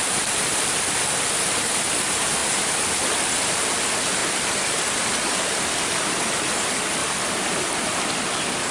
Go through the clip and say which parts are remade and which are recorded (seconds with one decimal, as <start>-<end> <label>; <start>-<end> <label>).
0.0-8.7 recorded